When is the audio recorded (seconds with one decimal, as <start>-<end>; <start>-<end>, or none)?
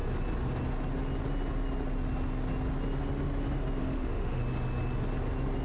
0.0-3.8; 4.4-5.6